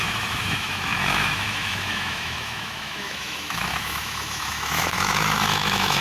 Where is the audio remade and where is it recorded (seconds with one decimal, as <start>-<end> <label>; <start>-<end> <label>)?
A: 0.0-6.0 remade